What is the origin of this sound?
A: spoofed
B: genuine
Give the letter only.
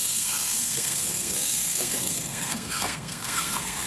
A